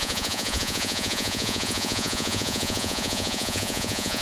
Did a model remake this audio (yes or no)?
yes